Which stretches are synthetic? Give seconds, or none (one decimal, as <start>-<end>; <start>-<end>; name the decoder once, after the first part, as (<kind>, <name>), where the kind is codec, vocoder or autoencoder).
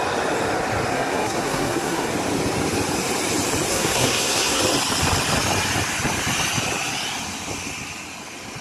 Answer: 0.9-2.1 (codec, SNAC); 3.7-4.6